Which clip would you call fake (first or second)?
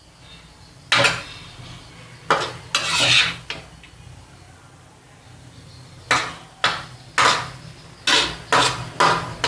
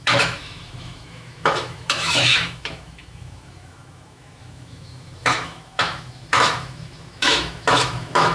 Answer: second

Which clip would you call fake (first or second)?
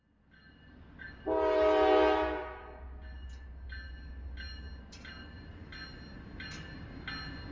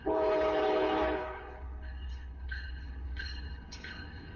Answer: second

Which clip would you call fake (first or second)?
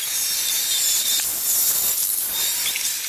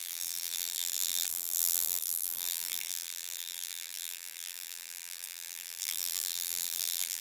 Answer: second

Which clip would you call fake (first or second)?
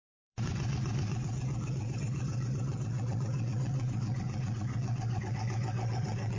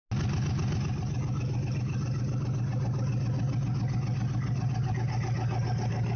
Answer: first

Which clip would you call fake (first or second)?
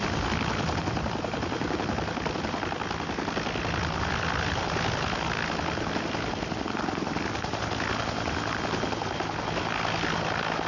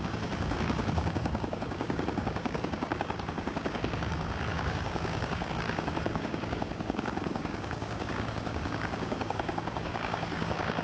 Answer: second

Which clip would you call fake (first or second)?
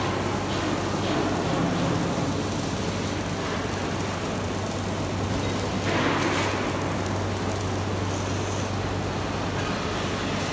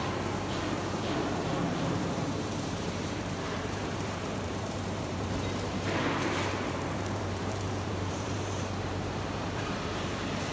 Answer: second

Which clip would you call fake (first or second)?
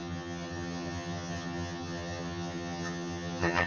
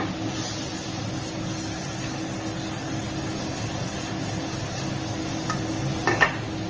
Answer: first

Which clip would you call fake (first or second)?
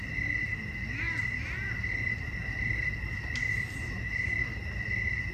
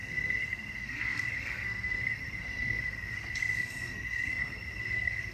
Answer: second